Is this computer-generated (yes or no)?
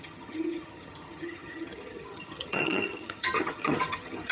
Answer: yes